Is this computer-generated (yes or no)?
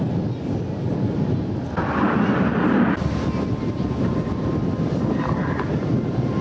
yes